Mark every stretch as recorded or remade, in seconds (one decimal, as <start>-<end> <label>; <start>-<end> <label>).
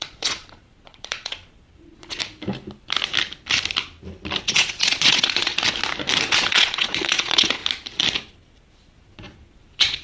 0.0-2.2 remade; 2.2-4.4 recorded; 4.4-5.5 remade; 5.5-6.3 recorded; 6.3-7.6 remade; 7.6-8.8 recorded; 8.8-10.0 remade